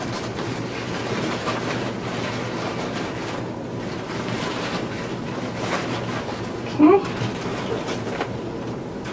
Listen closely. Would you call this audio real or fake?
real